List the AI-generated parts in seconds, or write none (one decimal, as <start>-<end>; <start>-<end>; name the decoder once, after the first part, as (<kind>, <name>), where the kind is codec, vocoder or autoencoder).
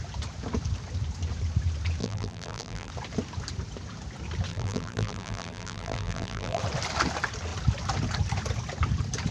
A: 2.0-2.9 (vocoder, BigVGAN v2); 4.5-6.6